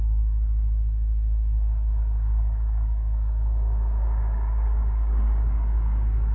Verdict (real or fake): fake